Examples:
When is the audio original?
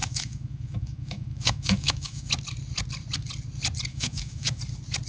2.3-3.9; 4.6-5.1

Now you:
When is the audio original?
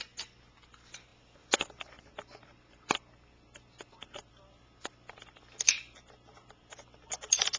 0.0-7.6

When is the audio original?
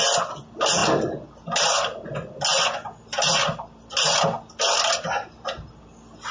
0.0-6.3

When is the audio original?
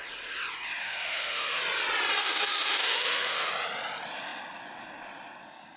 0.0-0.8; 1.6-2.2; 3.5-5.8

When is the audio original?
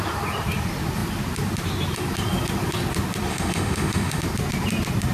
0.0-3.3; 4.2-5.1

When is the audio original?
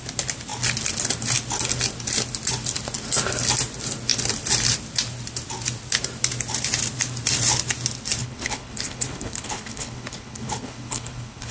0.0-8.2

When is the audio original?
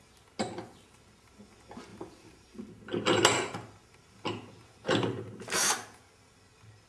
0.0-1.9; 2.5-6.9